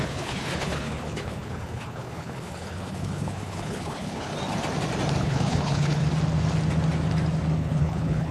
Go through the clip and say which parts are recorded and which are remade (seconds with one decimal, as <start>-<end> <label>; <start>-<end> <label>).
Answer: 0.0-4.3 remade; 4.3-5.2 recorded; 5.2-6.0 remade; 6.0-7.5 recorded; 7.5-8.3 remade